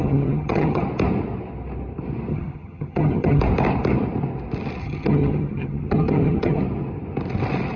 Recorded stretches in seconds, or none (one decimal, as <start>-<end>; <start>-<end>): 0.8-2.3; 3.4-4.8; 6.6-7.8